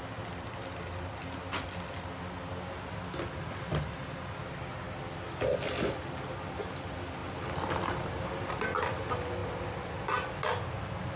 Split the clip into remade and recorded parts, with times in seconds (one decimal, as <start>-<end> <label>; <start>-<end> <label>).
0.0-11.2 recorded